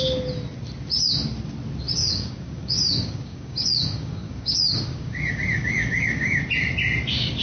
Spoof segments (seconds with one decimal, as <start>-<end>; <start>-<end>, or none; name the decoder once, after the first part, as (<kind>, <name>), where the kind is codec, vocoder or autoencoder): 2.0-6.4 (codec, DAC)